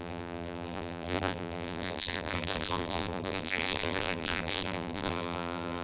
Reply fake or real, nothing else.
fake